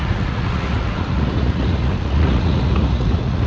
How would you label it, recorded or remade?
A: remade